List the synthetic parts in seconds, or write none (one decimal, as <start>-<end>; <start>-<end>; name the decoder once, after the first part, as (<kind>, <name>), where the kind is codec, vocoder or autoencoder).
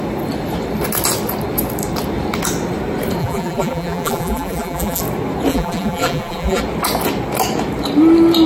3.2-5.0 (vocoder, BigVGAN v2); 5.5-6.6